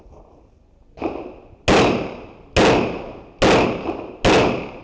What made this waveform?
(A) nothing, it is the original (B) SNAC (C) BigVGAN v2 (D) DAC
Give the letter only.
A